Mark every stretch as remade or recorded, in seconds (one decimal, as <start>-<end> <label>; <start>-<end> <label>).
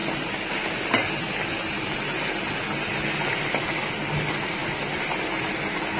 0.0-6.0 recorded